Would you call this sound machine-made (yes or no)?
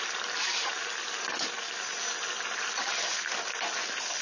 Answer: no